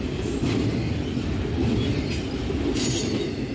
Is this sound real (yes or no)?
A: yes